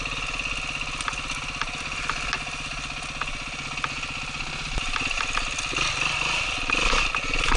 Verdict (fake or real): real